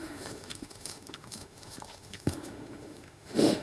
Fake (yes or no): yes